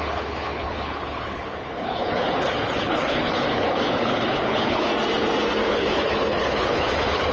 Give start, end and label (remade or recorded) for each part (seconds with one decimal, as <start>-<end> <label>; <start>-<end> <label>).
0.0-4.9 remade; 4.9-5.7 recorded; 5.7-7.3 remade